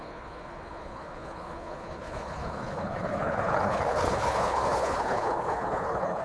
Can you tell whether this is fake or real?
fake